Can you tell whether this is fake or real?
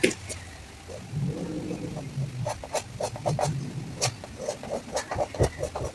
real